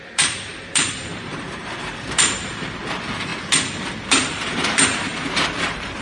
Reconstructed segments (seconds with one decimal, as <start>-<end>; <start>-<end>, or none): 0.0-3.3; 4.1-6.0